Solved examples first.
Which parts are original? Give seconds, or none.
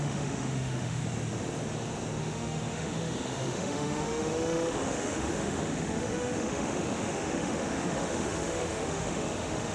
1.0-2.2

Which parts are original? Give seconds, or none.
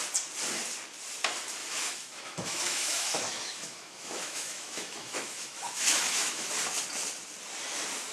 0.0-1.6; 6.5-8.1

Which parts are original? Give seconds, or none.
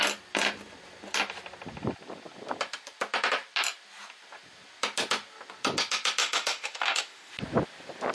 0.0-6.2; 7.3-8.1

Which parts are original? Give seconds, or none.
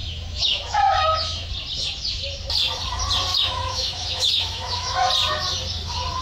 1.5-3.3; 5.1-6.2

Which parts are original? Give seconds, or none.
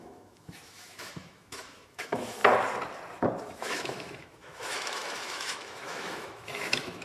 2.4-3.4